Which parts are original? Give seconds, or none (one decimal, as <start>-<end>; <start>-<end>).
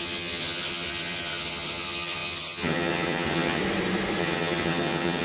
3.6-4.2